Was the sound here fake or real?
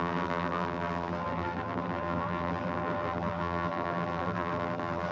fake